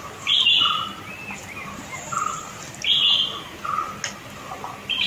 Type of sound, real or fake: real